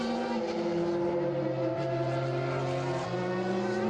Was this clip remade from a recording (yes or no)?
no